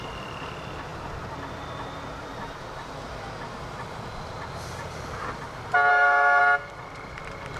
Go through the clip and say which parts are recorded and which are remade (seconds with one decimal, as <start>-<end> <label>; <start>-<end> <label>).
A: 0.0-5.9 recorded; 5.9-6.4 remade; 6.4-7.6 recorded